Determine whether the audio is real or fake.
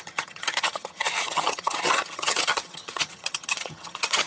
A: fake